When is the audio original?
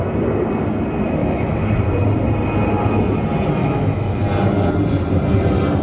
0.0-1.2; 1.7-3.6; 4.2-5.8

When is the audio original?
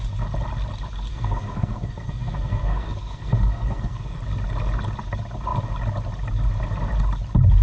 0.0-1.1; 4.2-7.6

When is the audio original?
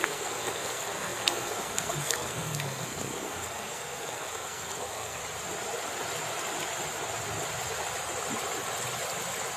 5.2-9.6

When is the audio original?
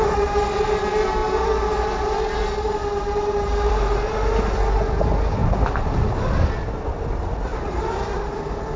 0.0-2.8; 3.7-7.5; 8.1-8.8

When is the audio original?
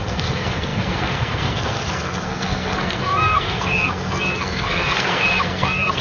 none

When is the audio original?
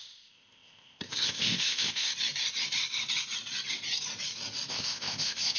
2.1-4.7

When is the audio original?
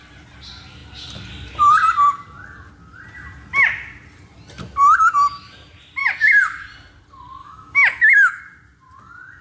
0.0-7.4; 8.4-9.4